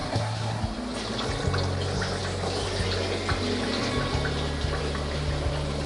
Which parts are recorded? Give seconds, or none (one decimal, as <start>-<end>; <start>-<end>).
0.6-5.9